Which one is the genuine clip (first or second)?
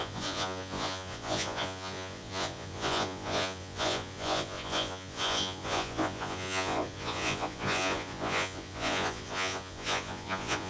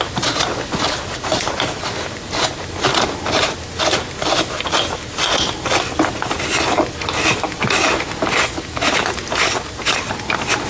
second